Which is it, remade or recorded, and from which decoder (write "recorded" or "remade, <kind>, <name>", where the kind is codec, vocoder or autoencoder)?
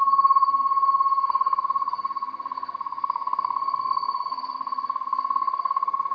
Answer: remade, codec, SNAC